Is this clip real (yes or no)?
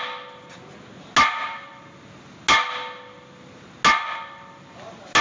yes